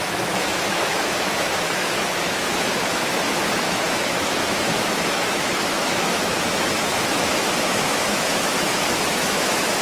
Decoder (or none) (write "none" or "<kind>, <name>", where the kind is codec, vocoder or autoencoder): autoencoder, DAC-VAE